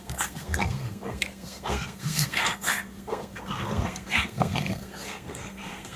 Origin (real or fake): fake